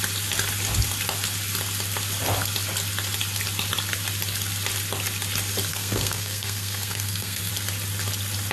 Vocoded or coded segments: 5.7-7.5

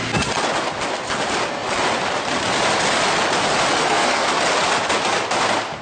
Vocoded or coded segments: 3.8-4.3

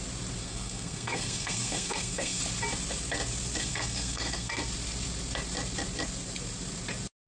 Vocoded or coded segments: 0.4-2.4; 3.6-4.6